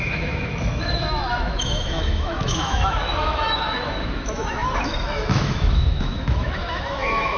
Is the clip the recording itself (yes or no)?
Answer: no